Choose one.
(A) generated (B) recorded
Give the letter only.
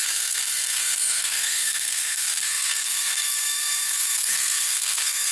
A